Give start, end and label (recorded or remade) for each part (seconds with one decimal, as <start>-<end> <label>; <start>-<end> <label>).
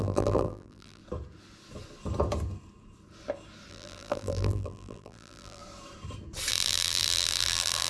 0.0-1.0 remade; 1.0-3.7 recorded; 3.7-5.6 remade; 5.6-6.5 recorded; 6.5-7.9 remade